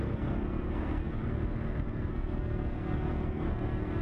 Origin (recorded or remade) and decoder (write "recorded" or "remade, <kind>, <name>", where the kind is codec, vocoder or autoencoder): remade, codec, SNAC